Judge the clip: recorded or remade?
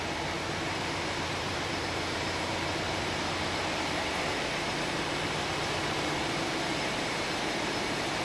remade